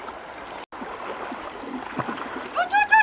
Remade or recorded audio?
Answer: recorded